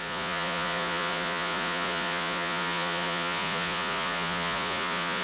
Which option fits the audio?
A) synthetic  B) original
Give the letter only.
A